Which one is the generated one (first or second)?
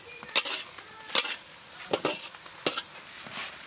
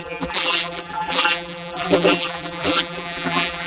second